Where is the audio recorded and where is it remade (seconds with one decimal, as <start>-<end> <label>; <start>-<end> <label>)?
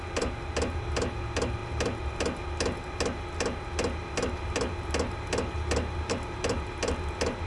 0.0-7.5 recorded